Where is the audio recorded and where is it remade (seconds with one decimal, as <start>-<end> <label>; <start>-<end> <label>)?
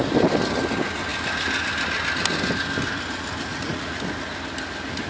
0.0-3.5 recorded; 3.5-4.0 remade; 4.0-5.1 recorded